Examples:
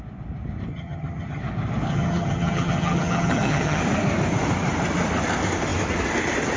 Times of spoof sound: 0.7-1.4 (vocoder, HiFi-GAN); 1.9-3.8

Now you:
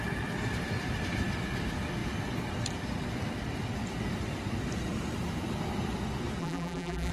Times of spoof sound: 6.4-7.1 (vocoder, BigVGAN v2)